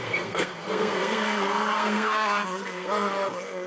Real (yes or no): no